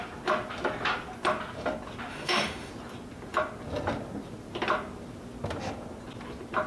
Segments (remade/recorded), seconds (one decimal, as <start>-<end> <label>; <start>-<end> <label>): 0.0-2.1 recorded; 2.1-2.7 remade; 2.7-6.7 recorded

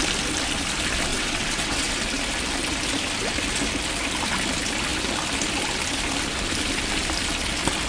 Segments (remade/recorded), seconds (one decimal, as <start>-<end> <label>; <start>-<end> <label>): 0.0-1.1 recorded; 1.1-1.9 remade; 1.9-7.9 recorded

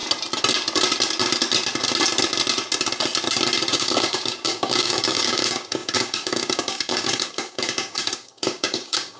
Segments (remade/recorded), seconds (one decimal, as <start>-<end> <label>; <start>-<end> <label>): 0.0-3.7 recorded; 3.7-9.2 remade

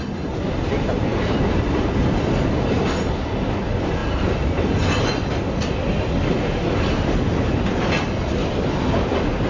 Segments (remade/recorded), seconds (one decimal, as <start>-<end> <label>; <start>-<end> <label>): 0.0-1.1 recorded; 1.1-2.0 remade; 2.0-9.5 recorded

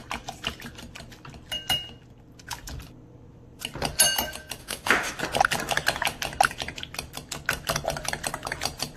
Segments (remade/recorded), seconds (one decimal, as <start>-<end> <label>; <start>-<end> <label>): 0.0-4.6 recorded; 4.6-5.2 remade; 5.2-9.0 recorded

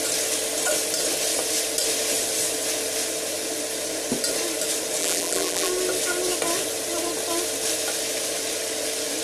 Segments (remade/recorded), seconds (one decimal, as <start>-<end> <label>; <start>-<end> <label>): 0.0-5.0 recorded; 5.0-5.7 remade; 5.7-9.2 recorded

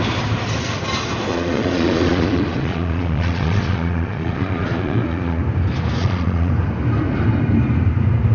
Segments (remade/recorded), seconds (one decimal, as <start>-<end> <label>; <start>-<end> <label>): 0.0-1.3 recorded; 1.3-5.4 remade; 5.4-6.0 recorded; 6.0-6.5 remade; 6.5-8.3 recorded